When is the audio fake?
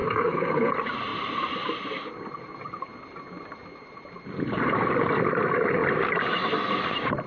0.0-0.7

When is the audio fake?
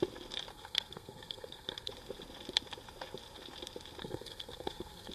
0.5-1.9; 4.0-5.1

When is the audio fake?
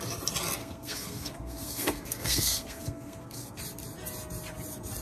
0.6-3.6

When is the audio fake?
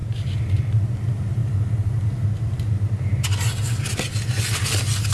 none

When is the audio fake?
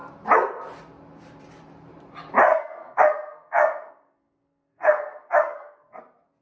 2.5-6.0